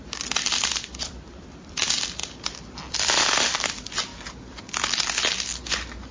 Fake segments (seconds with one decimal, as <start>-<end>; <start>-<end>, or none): 0.0-2.2; 2.9-4.1

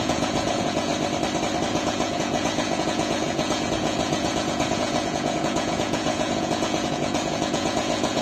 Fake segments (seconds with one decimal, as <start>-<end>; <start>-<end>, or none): 0.0-0.9; 1.7-8.2

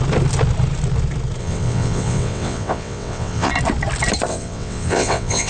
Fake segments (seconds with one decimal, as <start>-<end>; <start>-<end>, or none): 1.4-3.5; 4.3-5.5

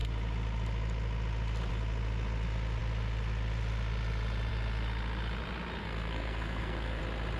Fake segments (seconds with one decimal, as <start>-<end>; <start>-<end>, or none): 5.8-7.0

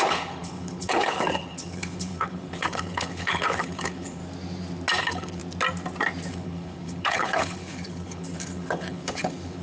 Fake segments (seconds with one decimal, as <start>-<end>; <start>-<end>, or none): 0.0-4.2; 5.0-5.4; 6.3-9.6